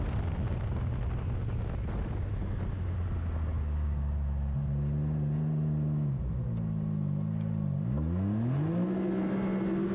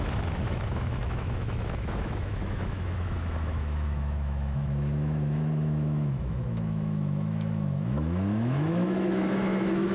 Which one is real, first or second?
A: first